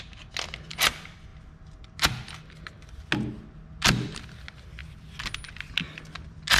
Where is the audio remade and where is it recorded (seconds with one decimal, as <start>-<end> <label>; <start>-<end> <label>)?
0.0-6.6 recorded